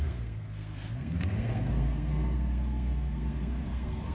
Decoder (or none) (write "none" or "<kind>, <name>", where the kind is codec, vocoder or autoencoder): codec, SNAC